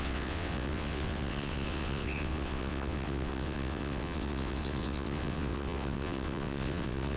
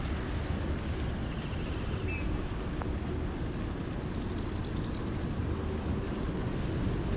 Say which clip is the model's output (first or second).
first